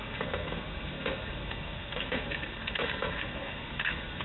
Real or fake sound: fake